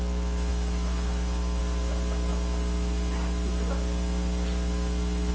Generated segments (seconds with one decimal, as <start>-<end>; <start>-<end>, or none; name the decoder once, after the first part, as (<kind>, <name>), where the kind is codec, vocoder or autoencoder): 0.5-1.6 (autoencoder, DAC-VAE)